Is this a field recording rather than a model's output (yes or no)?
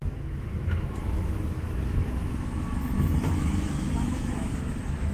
no